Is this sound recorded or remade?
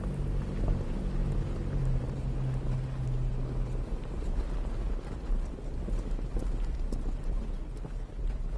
recorded